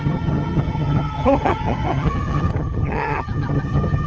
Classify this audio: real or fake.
fake